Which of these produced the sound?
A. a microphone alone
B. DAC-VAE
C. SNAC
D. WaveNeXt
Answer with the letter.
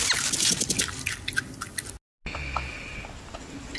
A